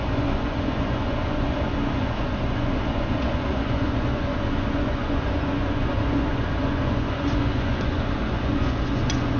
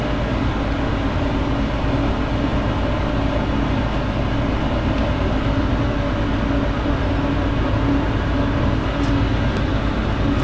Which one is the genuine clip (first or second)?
second